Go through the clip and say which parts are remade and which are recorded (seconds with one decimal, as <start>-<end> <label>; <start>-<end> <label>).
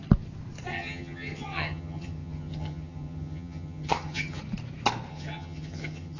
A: 0.0-0.7 recorded; 0.7-4.4 remade; 4.4-5.1 recorded; 5.1-6.2 remade